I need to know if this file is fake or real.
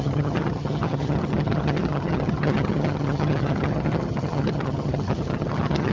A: fake